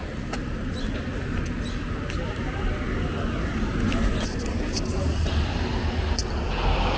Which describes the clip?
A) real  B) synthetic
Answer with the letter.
A